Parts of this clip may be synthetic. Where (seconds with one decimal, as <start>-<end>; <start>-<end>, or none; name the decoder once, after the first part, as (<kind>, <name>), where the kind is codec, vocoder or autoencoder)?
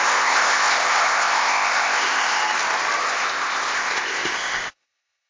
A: 0.0-2.4 (codec, ZipCodec); 3.0-5.3